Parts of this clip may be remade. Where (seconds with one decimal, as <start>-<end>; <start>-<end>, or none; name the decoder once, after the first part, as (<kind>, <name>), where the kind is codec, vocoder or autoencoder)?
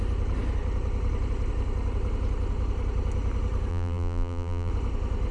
3.7-4.7 (vocoder, BigVGAN v2)